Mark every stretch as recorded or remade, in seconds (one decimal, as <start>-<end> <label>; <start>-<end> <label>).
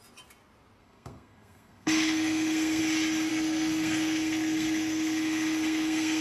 0.0-0.8 recorded; 0.8-2.8 remade; 2.8-3.3 recorded; 3.3-6.2 remade